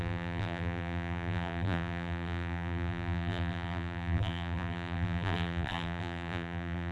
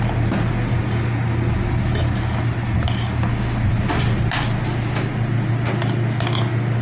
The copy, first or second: first